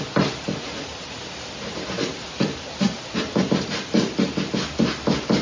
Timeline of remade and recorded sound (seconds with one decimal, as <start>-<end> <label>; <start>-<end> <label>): 0.0-0.9 recorded; 0.9-3.9 remade; 3.9-5.4 recorded